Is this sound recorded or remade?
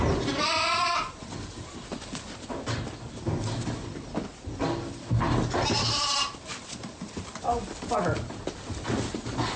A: recorded